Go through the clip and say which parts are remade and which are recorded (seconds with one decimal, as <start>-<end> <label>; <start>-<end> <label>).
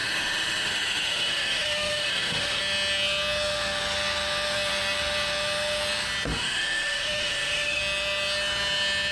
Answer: 0.0-2.6 remade; 2.6-6.3 recorded; 6.3-7.8 remade; 7.8-9.1 recorded